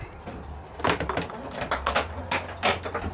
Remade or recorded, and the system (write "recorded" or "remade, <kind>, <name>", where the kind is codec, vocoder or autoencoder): recorded